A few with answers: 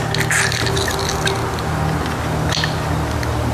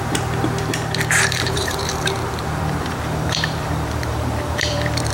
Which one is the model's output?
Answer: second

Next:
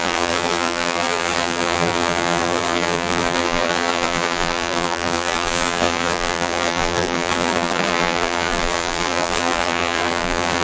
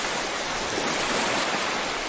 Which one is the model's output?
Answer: first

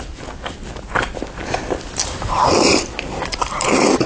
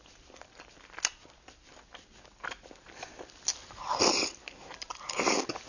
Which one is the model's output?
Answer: first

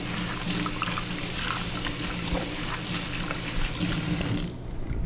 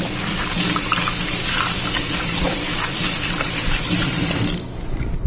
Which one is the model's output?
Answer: second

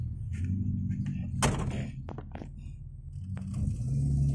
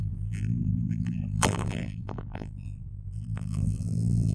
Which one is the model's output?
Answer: second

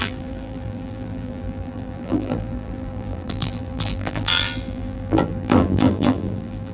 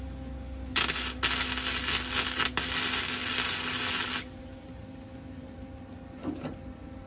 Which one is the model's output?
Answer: first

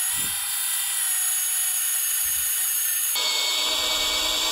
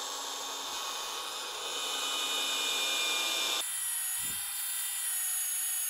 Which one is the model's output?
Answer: first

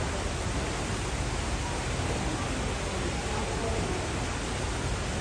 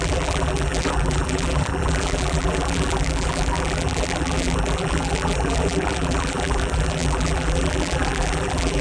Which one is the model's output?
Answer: second